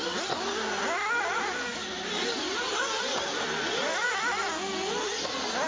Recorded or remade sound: recorded